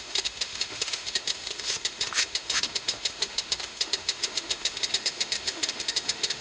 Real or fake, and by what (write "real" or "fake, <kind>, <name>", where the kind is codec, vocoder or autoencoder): fake, autoencoder, DAC-VAE